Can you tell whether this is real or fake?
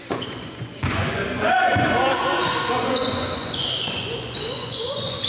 fake